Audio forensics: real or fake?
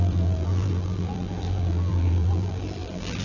fake